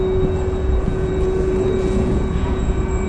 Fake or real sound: fake